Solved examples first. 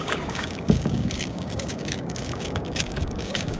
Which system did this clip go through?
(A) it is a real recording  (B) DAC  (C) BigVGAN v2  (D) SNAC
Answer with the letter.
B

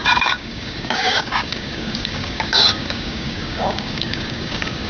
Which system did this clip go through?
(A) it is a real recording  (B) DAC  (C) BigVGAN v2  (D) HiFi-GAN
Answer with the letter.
B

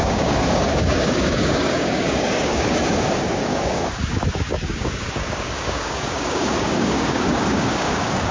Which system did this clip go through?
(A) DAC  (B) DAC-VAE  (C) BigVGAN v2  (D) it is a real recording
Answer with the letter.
A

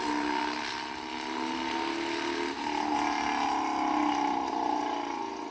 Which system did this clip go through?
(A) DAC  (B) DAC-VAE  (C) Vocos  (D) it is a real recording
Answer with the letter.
D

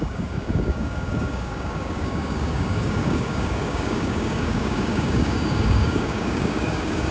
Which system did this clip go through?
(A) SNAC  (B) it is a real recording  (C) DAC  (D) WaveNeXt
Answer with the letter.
C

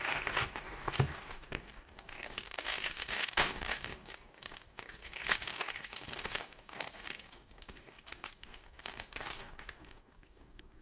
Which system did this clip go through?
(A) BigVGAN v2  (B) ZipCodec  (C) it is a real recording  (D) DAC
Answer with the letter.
D